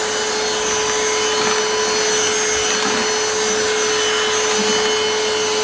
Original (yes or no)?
yes